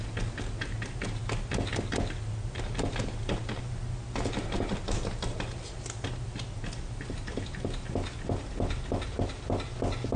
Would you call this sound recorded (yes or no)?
yes